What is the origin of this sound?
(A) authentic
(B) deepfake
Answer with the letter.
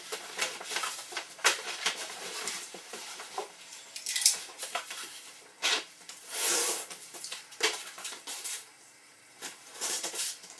B